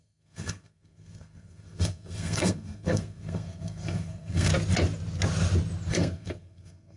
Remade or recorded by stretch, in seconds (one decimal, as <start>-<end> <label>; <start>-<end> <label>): 0.0-4.5 remade; 4.5-5.9 recorded; 5.9-7.0 remade